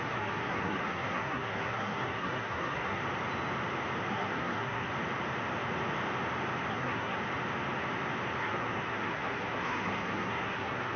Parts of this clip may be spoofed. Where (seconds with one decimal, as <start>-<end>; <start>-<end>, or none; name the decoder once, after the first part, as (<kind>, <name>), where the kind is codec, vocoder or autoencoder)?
0.0-3.0 (codec, SNAC); 4.1-4.9; 6.7-7.2; 8.4-11.0